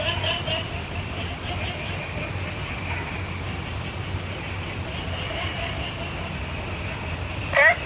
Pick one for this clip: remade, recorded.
recorded